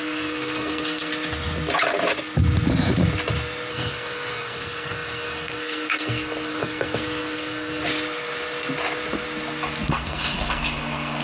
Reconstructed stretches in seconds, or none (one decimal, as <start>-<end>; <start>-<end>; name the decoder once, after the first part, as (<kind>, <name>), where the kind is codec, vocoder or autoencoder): 0.0-1.1 (codec, SNAC); 3.7-7.8; 9.9-11.2